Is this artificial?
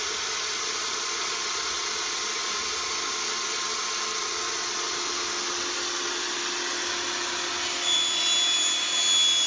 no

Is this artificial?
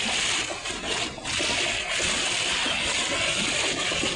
no